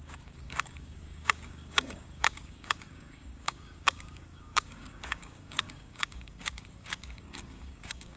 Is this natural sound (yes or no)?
no